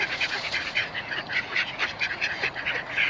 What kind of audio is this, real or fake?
fake